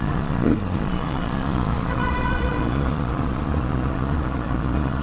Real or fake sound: fake